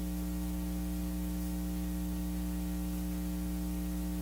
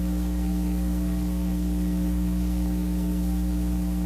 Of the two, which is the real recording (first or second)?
first